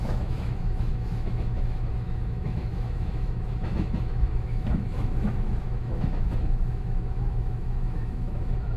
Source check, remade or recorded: remade